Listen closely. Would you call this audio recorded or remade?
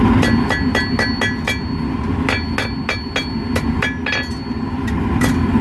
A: recorded